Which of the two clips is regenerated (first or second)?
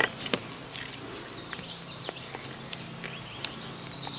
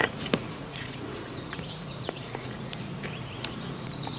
second